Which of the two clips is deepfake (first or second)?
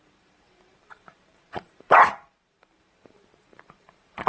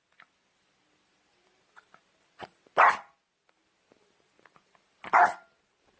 first